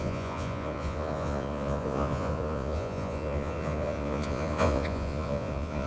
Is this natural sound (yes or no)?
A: no